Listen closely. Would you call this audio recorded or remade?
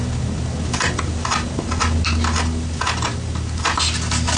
recorded